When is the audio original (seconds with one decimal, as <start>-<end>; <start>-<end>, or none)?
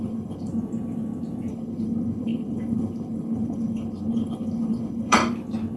0.5-1.5; 5.2-5.8